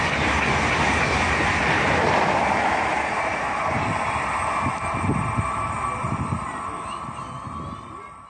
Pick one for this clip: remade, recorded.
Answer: recorded